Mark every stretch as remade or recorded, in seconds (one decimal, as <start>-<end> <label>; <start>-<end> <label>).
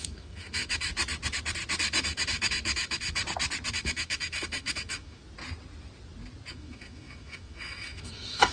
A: 0.0-0.9 remade; 0.9-1.8 recorded; 1.8-3.2 remade; 3.2-3.7 recorded; 3.7-5.2 remade; 5.2-6.5 recorded; 6.5-8.5 remade